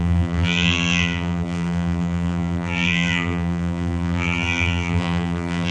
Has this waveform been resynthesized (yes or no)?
yes